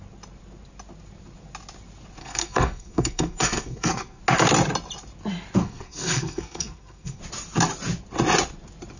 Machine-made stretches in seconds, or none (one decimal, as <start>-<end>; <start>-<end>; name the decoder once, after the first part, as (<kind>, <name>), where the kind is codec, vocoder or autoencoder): 2.2-4.2 (codec, SNAC); 5.6-7.2